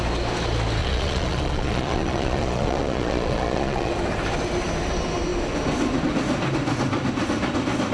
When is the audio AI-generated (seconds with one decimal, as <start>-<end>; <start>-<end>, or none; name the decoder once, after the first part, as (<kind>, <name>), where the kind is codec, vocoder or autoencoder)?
0.8-3.9 (vocoder, Vocos)